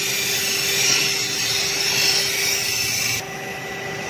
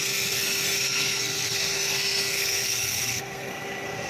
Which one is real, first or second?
first